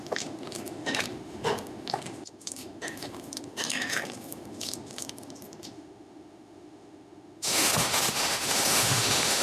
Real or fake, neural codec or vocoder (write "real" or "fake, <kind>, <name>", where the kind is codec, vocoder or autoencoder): fake, autoencoder, DAC-VAE